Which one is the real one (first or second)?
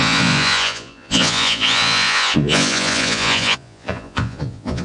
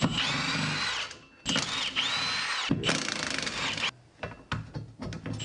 second